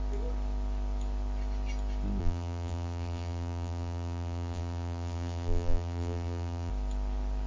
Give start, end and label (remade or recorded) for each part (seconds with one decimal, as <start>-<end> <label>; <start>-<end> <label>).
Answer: 0.0-2.2 recorded; 2.2-6.7 remade; 6.7-7.5 recorded

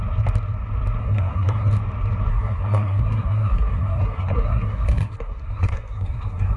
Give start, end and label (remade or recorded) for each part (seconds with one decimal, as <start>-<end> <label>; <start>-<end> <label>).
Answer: 0.0-1.0 recorded; 1.0-1.7 remade; 1.7-2.3 recorded; 2.3-6.6 remade

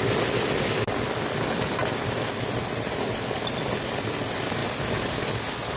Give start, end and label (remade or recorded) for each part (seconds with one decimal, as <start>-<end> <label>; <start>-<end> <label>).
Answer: 0.0-5.8 recorded